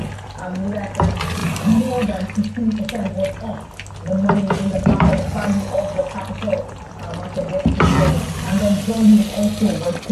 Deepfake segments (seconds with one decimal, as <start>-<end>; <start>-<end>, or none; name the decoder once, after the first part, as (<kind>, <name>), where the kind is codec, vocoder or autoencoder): none